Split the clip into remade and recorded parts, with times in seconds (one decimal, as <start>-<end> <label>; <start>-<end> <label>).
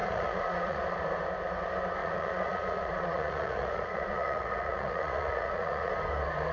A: 0.0-0.8 remade; 0.8-2.0 recorded; 2.0-5.9 remade; 5.9-6.5 recorded